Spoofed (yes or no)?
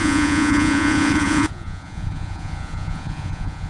yes